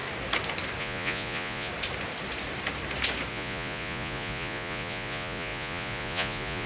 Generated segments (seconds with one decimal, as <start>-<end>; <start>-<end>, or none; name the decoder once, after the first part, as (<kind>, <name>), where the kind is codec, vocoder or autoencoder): 0.8-1.7 (vocoder, Vocos); 3.3-6.7